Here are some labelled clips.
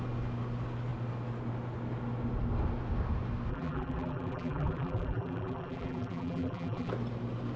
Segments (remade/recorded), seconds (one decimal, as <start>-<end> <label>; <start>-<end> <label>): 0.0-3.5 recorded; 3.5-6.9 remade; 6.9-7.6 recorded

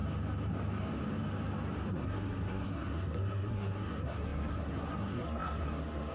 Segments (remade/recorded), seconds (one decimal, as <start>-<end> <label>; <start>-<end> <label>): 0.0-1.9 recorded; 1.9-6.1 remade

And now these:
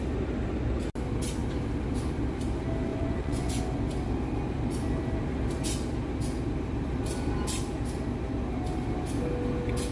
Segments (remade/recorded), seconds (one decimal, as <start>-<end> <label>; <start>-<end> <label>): 0.0-2.9 recorded; 2.9-3.6 remade; 3.6-9.9 recorded

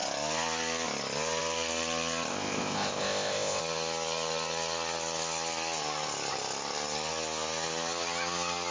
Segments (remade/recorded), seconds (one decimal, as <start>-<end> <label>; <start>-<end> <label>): 0.0-2.3 recorded; 2.3-3.6 remade; 3.6-8.7 recorded